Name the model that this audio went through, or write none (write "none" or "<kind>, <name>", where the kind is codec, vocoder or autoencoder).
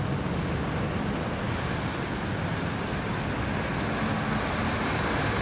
none